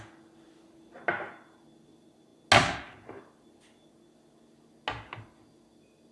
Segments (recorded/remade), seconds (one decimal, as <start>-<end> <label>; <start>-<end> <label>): 0.0-6.1 recorded

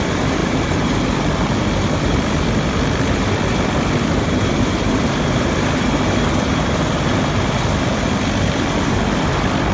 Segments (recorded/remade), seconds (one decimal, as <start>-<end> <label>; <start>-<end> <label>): 0.0-7.1 remade; 7.1-7.9 recorded; 7.9-9.7 remade

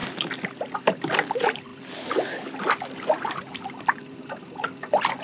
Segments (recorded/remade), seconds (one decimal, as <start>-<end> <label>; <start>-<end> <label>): 0.0-0.6 recorded; 0.6-5.2 remade

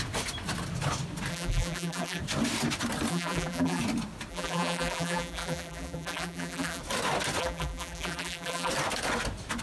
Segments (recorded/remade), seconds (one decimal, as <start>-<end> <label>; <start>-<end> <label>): 0.0-1.3 recorded; 1.3-2.2 remade; 2.2-3.1 recorded; 3.1-3.8 remade; 3.8-4.3 recorded; 4.3-6.8 remade; 6.8-7.4 recorded; 7.4-8.7 remade; 8.7-9.6 recorded

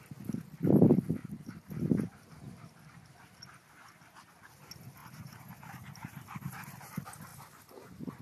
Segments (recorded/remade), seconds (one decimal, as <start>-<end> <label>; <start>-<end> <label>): 0.0-1.2 recorded; 1.2-1.7 remade; 1.7-5.0 recorded; 5.0-6.5 remade; 6.5-8.2 recorded

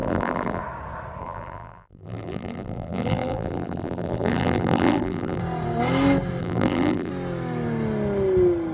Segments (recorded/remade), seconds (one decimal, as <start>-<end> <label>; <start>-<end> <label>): 0.0-0.6 remade; 0.6-1.2 recorded; 1.2-5.4 remade; 5.4-6.4 recorded; 6.4-7.1 remade; 7.1-8.7 recorded